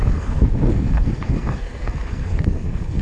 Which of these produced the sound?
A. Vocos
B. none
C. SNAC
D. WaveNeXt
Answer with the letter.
C